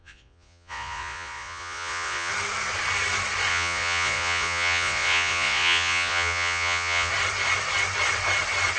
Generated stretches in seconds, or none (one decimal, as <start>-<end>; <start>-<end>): 0.0-2.3; 3.5-7.1